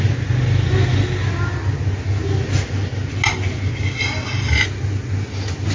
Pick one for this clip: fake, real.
real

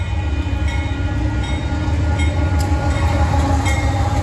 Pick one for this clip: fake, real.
real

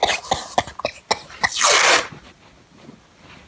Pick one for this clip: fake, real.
real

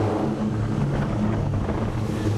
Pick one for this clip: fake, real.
fake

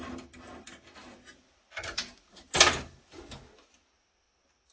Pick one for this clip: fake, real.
real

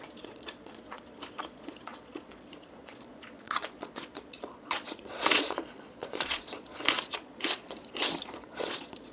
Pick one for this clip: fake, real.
fake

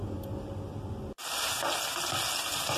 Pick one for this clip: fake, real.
real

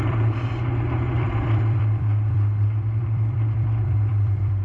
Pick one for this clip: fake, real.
fake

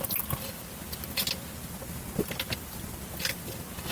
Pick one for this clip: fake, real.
real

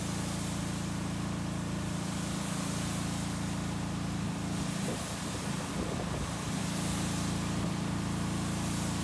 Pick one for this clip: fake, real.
real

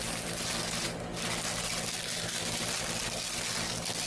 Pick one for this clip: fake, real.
real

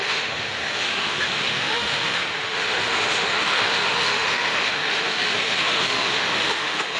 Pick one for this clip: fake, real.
fake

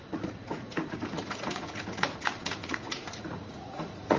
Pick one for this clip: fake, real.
fake